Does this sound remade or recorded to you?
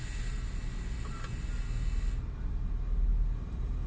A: recorded